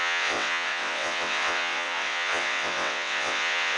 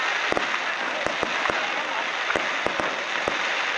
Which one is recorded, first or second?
second